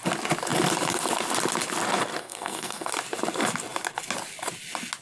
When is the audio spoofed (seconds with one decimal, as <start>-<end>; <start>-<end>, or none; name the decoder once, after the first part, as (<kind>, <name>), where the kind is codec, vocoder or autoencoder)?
2.2-2.9 (codec, SNAC)